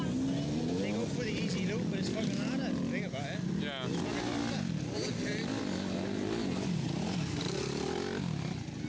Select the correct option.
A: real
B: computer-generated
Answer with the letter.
A